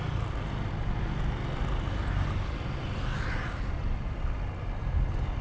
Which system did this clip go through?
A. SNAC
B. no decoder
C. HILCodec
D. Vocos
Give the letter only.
B